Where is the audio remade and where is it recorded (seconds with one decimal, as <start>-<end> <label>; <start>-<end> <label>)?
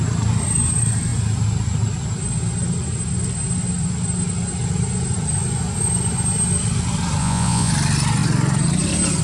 0.0-7.2 recorded; 7.2-7.7 remade; 7.7-9.2 recorded